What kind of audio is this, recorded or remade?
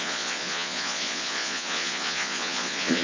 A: remade